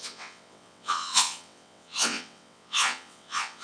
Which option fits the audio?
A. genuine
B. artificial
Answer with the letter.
B